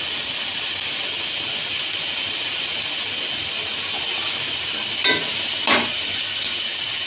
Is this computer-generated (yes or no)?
no